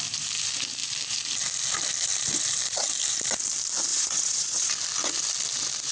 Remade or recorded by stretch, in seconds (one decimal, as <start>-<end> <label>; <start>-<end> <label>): 0.0-3.9 recorded; 3.9-4.7 remade; 4.7-5.9 recorded